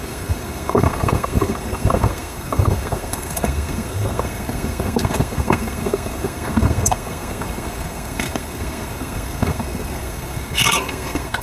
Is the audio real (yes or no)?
no